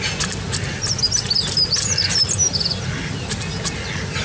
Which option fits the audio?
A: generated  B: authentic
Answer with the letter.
B